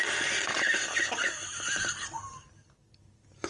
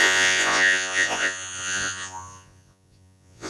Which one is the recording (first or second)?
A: first